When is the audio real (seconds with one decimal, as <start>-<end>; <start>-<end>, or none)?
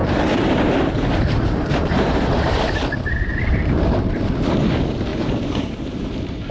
3.7-5.1; 5.7-6.5